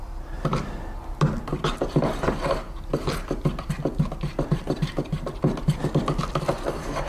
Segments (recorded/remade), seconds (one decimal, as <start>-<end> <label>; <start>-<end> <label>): 0.0-7.1 recorded